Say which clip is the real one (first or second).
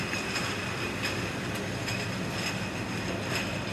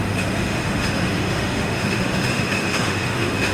first